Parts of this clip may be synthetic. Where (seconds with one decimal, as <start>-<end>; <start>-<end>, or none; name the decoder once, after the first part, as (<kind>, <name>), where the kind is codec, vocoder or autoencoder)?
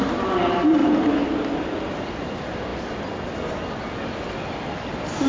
none